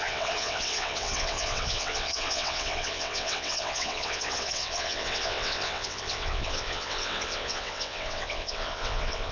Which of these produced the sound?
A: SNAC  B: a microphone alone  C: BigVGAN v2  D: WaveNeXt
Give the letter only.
D